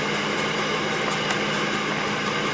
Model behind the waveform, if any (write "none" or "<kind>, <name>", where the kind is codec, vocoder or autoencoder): none